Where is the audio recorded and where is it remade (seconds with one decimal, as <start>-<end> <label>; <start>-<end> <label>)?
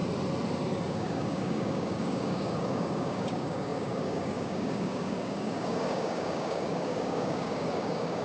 0.0-0.9 recorded; 0.9-8.2 remade